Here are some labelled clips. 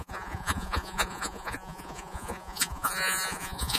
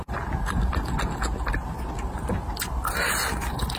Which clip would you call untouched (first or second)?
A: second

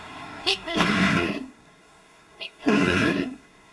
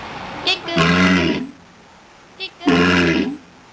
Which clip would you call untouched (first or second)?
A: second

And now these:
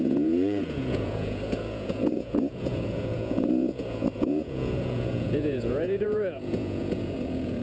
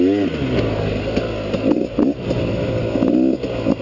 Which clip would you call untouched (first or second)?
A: second